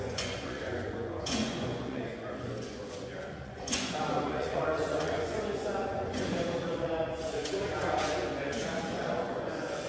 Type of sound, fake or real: fake